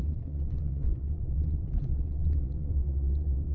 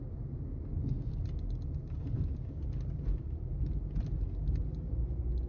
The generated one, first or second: first